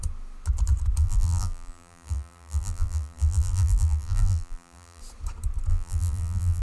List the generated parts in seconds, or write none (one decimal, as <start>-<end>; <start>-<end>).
1.0-5.0; 5.7-6.6